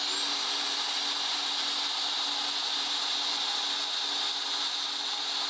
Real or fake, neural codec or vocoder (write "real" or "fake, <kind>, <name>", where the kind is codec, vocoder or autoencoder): real